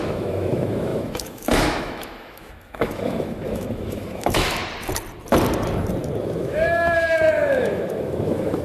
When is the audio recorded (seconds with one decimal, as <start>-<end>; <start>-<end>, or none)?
4.6-6.2